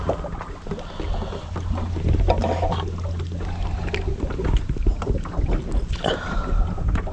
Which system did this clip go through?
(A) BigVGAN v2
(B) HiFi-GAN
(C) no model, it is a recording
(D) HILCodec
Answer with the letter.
C